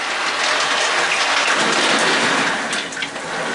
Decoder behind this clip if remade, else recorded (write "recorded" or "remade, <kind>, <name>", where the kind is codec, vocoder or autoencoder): recorded